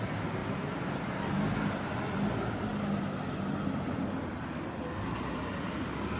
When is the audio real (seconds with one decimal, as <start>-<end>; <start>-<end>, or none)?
0.0-6.2